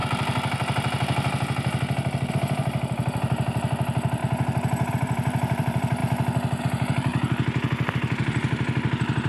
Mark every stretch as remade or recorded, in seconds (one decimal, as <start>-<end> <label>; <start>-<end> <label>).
0.0-2.3 recorded; 2.3-4.2 remade; 4.2-4.9 recorded; 4.9-6.0 remade; 6.0-6.6 recorded; 6.6-7.1 remade; 7.1-7.9 recorded; 7.9-9.3 remade